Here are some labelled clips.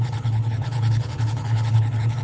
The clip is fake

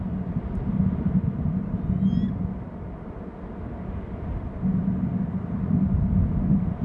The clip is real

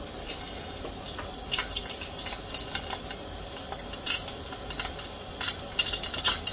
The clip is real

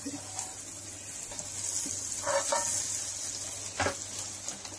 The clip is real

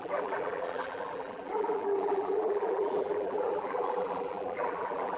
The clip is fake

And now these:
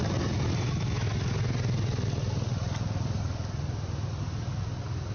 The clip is real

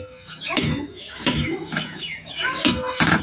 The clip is fake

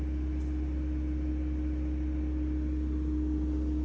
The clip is real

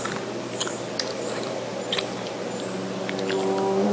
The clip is real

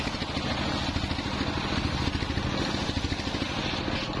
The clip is real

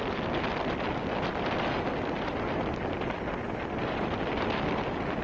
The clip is real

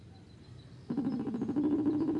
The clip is real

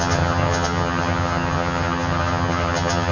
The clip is fake